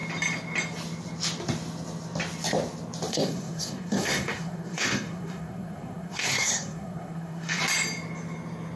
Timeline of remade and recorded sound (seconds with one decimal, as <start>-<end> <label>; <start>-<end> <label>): 0.0-3.1 recorded; 3.1-7.6 remade; 7.6-8.8 recorded